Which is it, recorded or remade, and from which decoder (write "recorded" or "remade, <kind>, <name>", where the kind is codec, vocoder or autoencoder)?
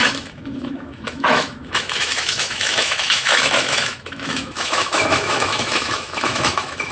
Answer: remade, autoencoder, DAC-VAE